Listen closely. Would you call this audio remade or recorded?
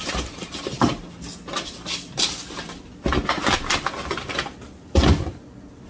recorded